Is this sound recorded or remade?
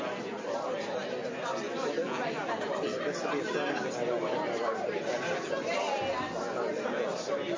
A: recorded